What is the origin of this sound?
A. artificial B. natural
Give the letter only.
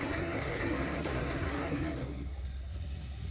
A